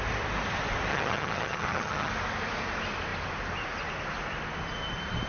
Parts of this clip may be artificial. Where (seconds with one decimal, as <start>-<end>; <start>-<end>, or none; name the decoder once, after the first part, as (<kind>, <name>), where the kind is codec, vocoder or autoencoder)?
0.9-2.1 (vocoder, HiFi-GAN)